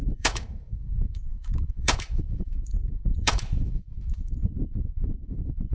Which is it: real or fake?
fake